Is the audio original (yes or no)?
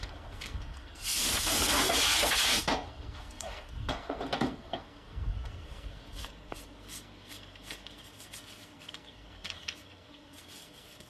no